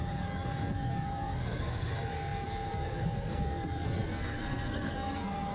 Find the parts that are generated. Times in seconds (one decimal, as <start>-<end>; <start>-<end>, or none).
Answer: 0.0-5.5